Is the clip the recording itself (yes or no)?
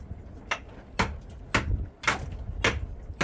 yes